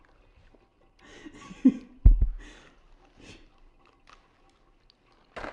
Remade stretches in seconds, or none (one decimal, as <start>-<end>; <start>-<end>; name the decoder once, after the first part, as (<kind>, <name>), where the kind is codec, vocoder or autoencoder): none